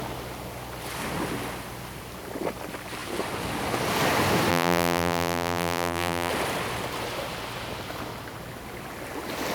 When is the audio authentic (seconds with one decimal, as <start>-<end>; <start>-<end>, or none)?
0.0-4.5; 6.3-9.5